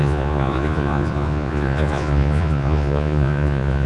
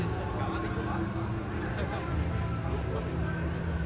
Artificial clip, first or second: first